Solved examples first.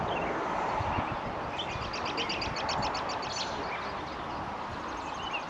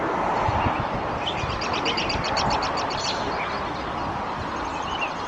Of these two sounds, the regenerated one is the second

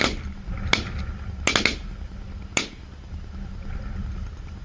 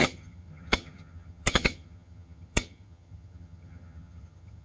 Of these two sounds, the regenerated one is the second